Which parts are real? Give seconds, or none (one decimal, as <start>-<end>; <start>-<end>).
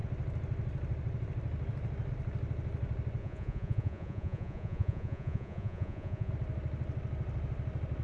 0.0-3.2; 6.3-8.0